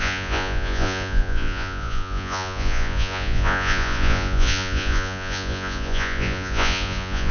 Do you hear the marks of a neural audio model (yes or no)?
yes